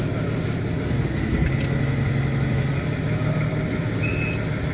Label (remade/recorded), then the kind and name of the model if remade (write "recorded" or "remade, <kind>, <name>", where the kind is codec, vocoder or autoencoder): recorded